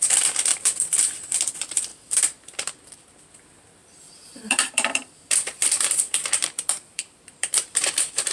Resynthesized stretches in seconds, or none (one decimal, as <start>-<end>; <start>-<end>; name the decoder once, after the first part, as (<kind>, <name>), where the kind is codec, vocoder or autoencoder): 0.5-1.0 (vocoder, BigVGAN v2); 3.8-8.3